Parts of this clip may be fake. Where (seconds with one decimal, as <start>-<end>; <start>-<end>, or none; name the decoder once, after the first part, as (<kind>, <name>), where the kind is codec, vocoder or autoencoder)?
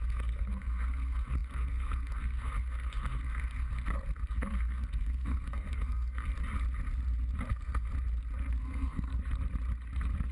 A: 0.0-6.3 (codec, SNAC); 7.5-7.9; 8.6-9.1